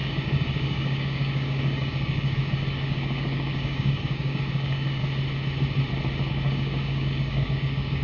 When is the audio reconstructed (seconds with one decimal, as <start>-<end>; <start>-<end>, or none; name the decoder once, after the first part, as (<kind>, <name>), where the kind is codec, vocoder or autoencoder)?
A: 0.0-5.0 (codec, DAC); 6.3-8.0